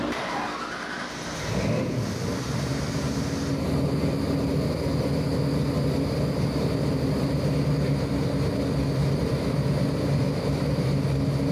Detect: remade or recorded recorded